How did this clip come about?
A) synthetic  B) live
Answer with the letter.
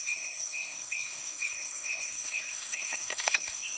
A